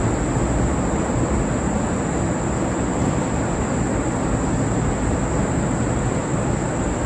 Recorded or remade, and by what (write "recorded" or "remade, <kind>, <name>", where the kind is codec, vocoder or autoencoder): recorded